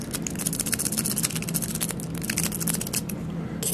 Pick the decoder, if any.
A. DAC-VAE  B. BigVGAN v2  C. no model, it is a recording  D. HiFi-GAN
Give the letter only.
C